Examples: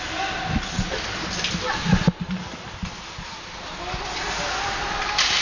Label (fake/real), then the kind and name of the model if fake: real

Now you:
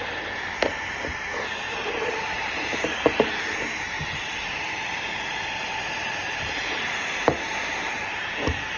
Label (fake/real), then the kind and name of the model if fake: fake, vocoder, BigVGAN v2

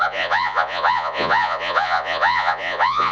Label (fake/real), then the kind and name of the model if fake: fake, vocoder, Vocos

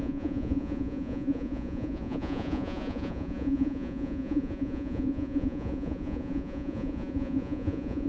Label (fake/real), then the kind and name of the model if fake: fake, vocoder, Vocos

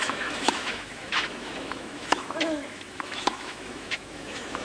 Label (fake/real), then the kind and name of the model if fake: fake, autoencoder, DAC-VAE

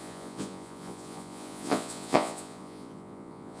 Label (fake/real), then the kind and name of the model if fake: fake, vocoder, Vocos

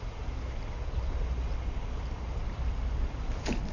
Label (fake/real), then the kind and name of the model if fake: real